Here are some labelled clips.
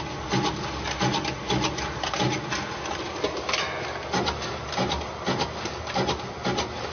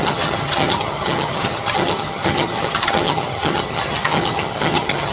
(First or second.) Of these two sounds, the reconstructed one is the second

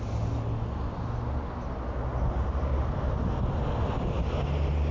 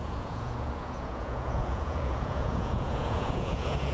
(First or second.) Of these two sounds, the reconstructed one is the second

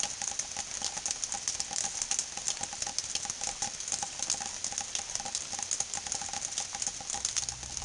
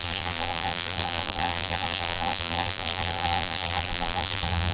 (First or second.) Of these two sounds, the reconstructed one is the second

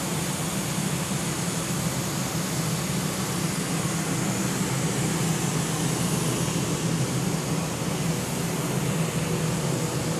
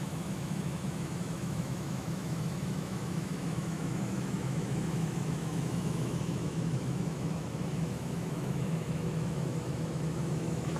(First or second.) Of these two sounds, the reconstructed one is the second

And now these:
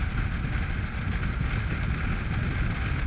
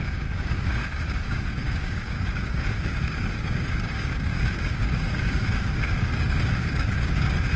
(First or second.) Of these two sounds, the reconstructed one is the second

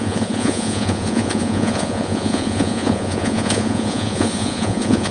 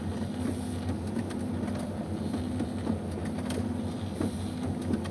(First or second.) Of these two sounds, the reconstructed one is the first